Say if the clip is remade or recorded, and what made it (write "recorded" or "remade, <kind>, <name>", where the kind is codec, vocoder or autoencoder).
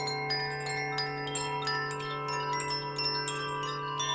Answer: recorded